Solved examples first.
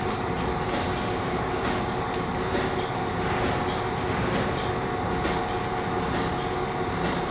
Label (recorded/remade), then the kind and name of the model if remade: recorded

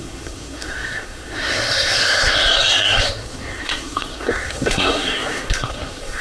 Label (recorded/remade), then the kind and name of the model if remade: remade, codec, SNAC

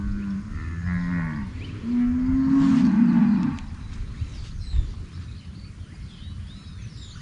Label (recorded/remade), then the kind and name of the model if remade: recorded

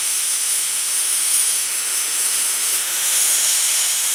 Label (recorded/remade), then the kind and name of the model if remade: remade, autoencoder, DAC-VAE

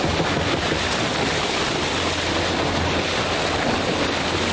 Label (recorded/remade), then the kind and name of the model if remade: recorded